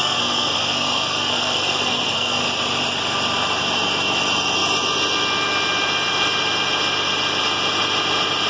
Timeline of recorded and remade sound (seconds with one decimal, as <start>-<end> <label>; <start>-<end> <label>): 0.0-2.4 remade; 2.4-8.5 recorded